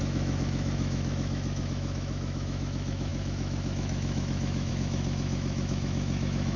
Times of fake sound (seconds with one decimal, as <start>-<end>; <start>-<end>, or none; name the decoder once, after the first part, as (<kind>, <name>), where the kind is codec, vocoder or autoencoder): 0.0-6.6 (autoencoder, DAC-VAE)